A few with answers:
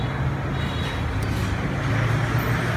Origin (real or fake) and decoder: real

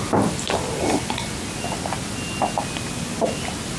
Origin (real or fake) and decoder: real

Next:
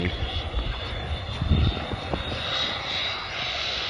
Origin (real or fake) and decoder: fake, vocoder, Vocos